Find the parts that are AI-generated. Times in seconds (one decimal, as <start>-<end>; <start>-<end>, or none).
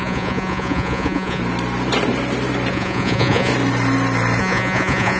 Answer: 0.0-1.4; 2.7-3.5; 4.4-5.2